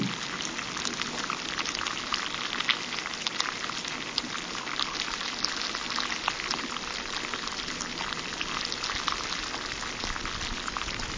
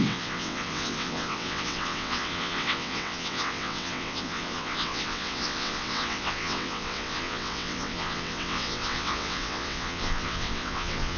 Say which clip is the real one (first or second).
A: first